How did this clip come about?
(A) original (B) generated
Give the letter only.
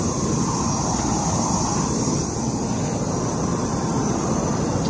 B